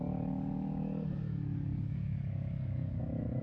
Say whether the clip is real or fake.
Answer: fake